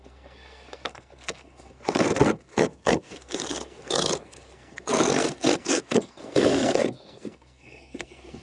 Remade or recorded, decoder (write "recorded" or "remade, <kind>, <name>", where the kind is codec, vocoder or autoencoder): remade, codec, SNAC